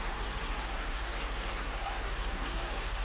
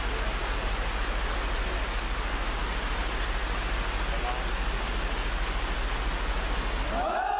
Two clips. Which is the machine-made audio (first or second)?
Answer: first